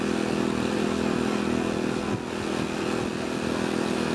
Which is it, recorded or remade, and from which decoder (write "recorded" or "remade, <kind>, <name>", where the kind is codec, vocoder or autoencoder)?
recorded